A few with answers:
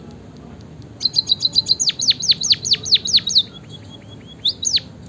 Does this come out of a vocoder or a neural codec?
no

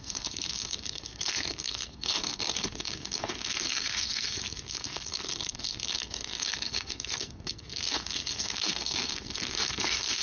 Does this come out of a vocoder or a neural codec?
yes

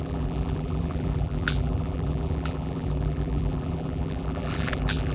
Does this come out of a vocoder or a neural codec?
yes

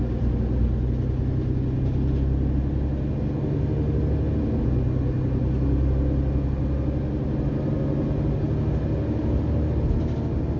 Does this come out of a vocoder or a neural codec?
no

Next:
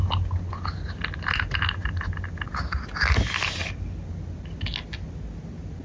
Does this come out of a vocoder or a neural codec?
no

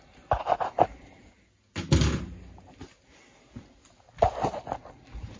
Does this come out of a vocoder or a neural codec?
no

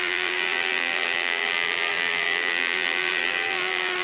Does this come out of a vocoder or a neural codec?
yes